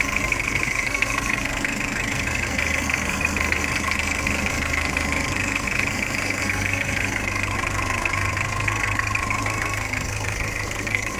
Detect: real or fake fake